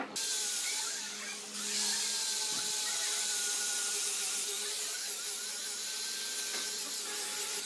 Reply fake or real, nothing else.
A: real